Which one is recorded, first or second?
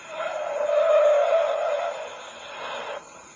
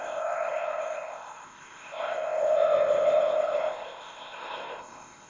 first